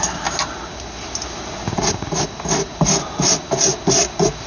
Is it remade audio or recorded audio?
recorded